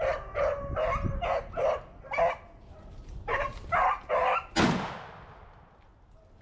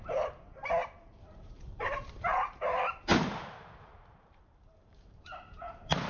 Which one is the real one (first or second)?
first